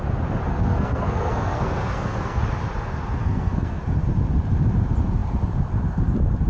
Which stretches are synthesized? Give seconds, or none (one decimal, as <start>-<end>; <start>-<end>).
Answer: 0.5-2.4; 3.2-3.8